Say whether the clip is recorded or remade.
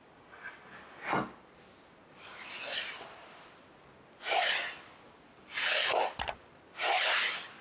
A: recorded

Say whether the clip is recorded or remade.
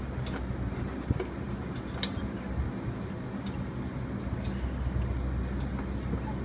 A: recorded